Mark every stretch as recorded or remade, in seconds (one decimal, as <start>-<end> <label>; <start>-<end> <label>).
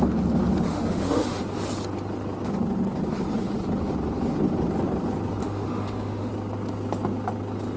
0.0-0.7 recorded; 0.7-1.4 remade; 1.4-5.4 recorded; 5.4-6.3 remade; 6.3-7.8 recorded